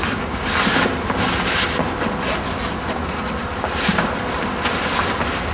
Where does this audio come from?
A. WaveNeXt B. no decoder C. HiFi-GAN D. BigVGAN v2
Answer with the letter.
B